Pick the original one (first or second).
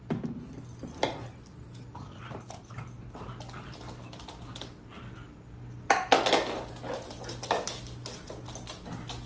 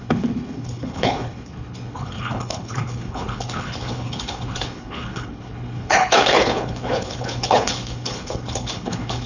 first